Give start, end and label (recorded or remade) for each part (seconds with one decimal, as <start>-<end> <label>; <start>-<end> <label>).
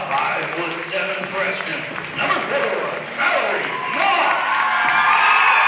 0.0-5.7 recorded